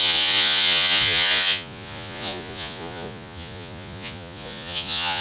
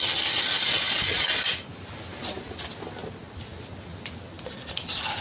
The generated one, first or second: first